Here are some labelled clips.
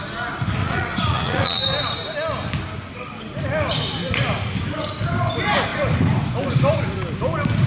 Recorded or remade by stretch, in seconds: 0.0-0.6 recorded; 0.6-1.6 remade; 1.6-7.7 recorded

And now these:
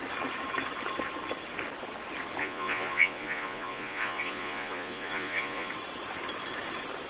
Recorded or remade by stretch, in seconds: 0.0-2.4 recorded; 2.4-5.7 remade; 5.7-7.1 recorded

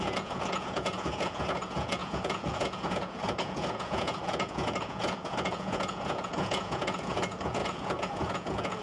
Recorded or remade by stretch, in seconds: 0.0-8.8 remade